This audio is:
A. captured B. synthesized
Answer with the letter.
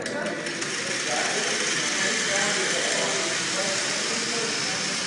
A